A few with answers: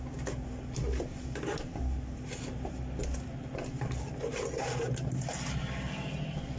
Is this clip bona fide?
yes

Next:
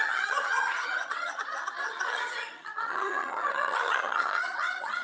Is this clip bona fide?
no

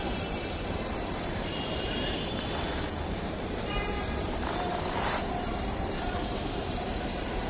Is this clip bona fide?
no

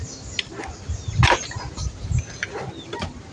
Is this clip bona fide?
yes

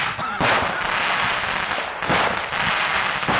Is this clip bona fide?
yes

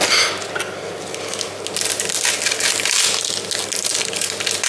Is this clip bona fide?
yes